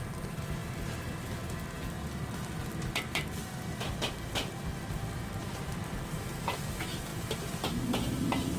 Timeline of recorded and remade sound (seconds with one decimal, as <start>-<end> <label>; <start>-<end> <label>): 0.0-5.4 recorded; 5.4-6.5 remade; 6.5-7.1 recorded; 7.1-7.7 remade; 7.7-8.6 recorded